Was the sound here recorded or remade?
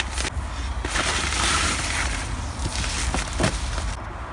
recorded